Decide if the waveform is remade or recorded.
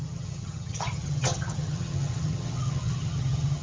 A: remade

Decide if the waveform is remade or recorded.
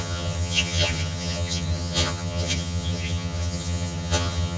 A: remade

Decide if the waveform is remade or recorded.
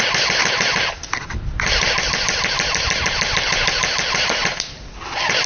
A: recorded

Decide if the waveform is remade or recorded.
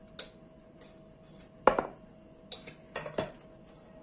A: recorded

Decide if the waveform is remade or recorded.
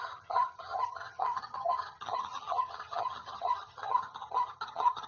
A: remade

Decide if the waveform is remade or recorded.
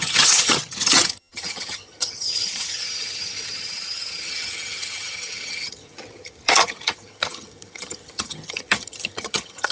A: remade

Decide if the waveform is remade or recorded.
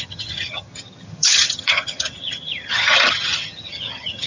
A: remade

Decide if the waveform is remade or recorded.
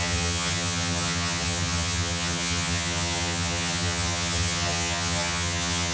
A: remade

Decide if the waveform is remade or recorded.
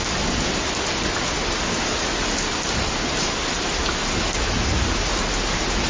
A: recorded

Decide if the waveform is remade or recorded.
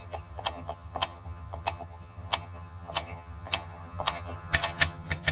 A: remade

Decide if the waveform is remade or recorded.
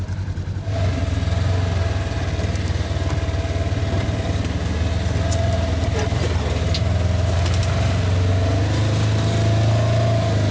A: recorded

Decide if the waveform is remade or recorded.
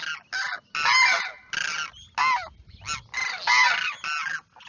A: recorded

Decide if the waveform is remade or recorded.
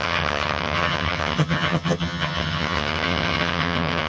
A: remade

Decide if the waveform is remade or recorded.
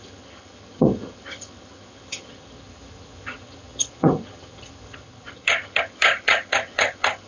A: remade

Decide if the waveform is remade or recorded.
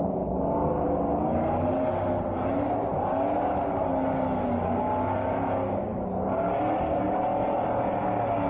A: recorded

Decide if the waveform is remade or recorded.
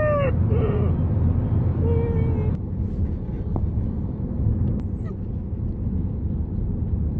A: recorded